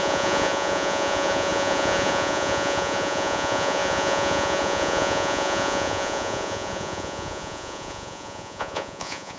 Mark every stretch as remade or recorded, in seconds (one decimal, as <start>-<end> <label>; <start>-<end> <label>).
0.0-9.4 remade